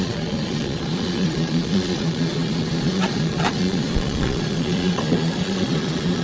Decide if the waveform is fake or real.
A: fake